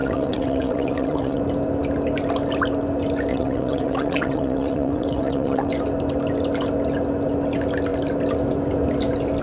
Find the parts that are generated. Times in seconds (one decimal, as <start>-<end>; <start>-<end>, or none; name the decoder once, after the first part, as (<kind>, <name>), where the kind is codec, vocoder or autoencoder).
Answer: 0.0-1.4 (vocoder, WaveNeXt); 3.3-5.7